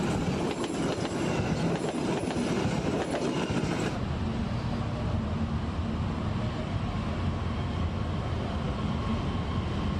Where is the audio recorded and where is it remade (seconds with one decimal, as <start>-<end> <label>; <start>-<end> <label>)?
0.0-10.0 recorded